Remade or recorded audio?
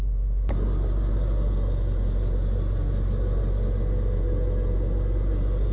recorded